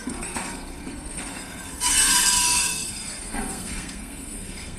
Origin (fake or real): fake